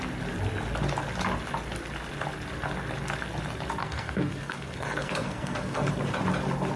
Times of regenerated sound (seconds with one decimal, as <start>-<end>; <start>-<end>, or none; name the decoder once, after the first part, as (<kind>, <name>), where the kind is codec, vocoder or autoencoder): 3.8-5.9 (codec, SNAC)